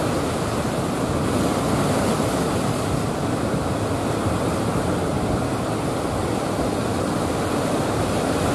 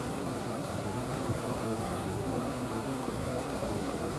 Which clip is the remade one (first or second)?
second